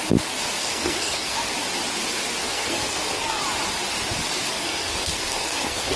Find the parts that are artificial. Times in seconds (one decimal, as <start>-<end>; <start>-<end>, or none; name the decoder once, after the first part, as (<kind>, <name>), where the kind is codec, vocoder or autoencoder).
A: 0.6-1.5 (codec, SNAC); 2.4-3.4; 4.5-6.0